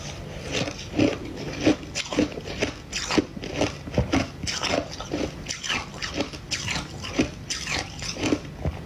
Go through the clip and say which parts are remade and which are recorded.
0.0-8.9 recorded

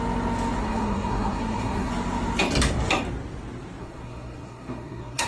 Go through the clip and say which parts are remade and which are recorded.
0.0-0.6 recorded; 0.6-1.9 remade; 1.9-3.8 recorded; 3.8-5.3 remade

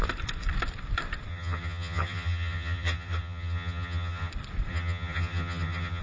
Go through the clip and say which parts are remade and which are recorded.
0.0-1.3 recorded; 1.3-4.3 remade; 4.3-4.7 recorded; 4.7-6.0 remade

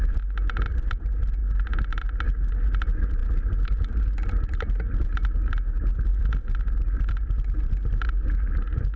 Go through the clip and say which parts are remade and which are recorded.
0.0-9.0 recorded

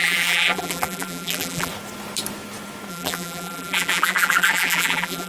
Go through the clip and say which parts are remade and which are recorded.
0.0-1.7 remade; 1.7-2.9 recorded; 2.9-5.3 remade

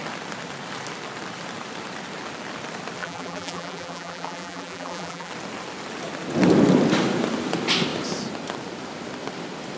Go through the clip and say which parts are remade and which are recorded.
0.0-3.0 recorded; 3.0-5.3 remade; 5.3-9.8 recorded

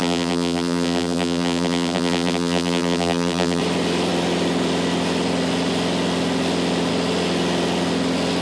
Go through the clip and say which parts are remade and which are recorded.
0.0-3.6 remade; 3.6-8.4 recorded

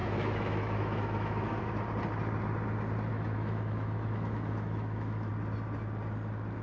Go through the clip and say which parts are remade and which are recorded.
0.0-1.6 remade; 1.6-3.1 recorded; 3.1-5.3 remade; 5.3-6.6 recorded